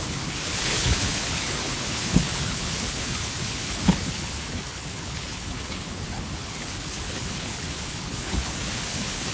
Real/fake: fake